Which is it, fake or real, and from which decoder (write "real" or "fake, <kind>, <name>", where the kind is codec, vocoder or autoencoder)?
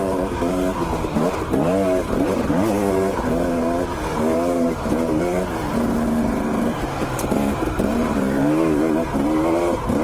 fake, vocoder, BigVGAN v2